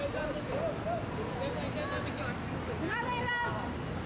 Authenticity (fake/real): real